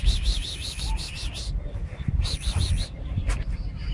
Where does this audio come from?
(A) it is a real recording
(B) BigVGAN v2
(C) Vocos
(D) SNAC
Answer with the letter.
A